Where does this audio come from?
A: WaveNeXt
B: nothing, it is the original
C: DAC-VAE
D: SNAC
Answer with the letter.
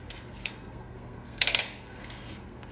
D